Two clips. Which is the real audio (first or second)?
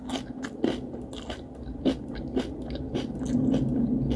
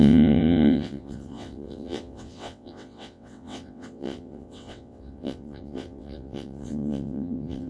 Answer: first